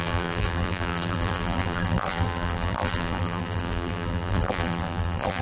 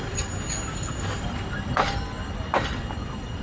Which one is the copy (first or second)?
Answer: first